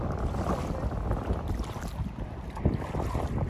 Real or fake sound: real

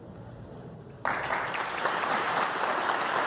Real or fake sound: fake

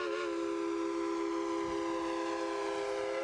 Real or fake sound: real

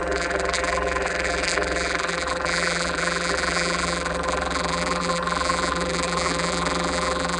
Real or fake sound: fake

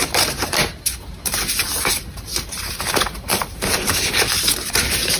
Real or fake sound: fake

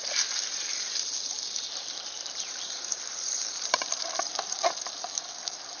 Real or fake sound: fake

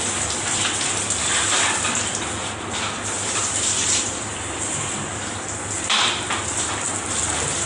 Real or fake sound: fake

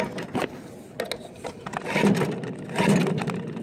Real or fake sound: real